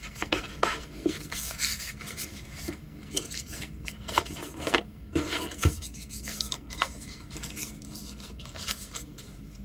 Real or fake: fake